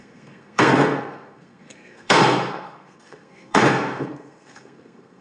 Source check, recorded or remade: remade